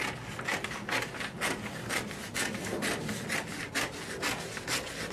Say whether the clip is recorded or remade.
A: recorded